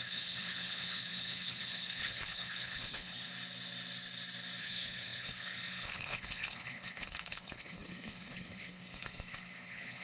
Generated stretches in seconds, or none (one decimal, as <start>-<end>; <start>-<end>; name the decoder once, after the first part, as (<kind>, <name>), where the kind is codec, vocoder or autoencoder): 0.0-3.3 (codec, HILCodec); 4.6-10.0